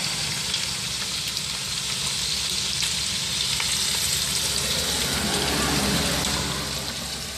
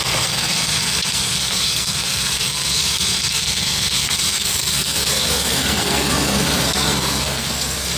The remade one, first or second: second